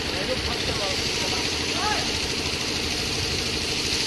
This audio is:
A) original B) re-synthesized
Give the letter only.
A